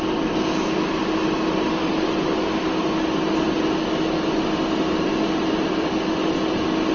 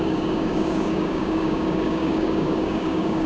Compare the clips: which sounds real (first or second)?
first